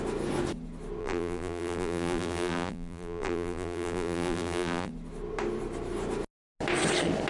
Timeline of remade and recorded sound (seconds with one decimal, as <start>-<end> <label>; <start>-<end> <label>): 0.0-1.0 recorded; 1.0-4.9 remade; 4.9-7.3 recorded